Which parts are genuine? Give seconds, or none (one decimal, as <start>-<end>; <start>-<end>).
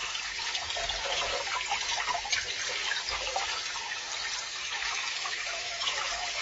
0.0-4.6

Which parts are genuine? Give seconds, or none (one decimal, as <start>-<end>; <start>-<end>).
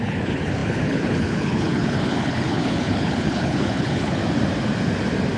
4.2-5.4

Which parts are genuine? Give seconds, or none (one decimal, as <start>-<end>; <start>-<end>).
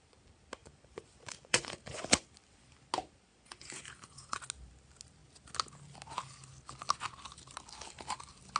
0.0-0.6; 2.0-3.3; 4.4-8.6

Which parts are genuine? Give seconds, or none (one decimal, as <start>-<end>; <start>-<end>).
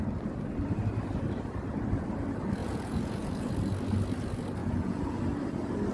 0.0-2.6; 3.5-4.6; 5.2-5.9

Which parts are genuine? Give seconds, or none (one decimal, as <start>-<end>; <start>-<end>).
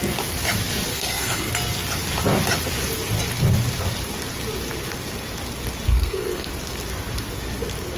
0.0-0.9; 1.5-5.9; 6.5-8.0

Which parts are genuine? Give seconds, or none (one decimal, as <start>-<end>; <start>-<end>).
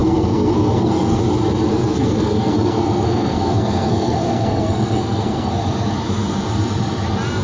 1.2-1.7; 5.5-7.4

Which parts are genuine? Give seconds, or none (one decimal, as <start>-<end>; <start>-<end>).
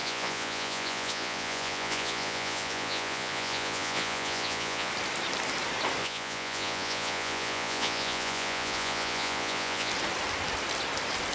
4.9-6.0; 9.9-11.3